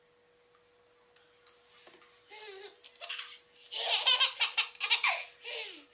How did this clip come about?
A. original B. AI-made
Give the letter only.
A